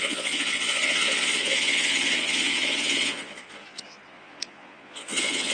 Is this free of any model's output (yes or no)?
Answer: no